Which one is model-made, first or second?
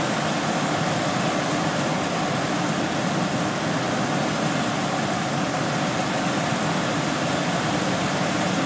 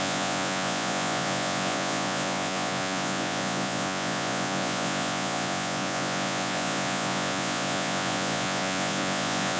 second